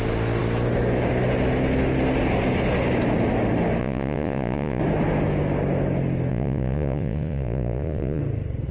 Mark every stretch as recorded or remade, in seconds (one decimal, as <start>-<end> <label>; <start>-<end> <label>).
0.0-3.8 recorded; 3.8-4.8 remade; 4.8-6.3 recorded; 6.3-8.2 remade; 8.2-8.7 recorded